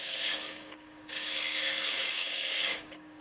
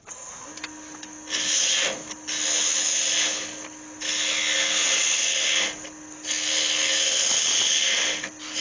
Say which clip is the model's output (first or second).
first